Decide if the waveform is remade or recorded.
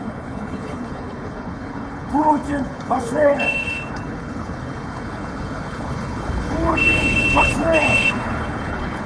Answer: remade